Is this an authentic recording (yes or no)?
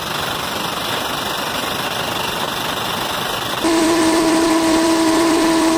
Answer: no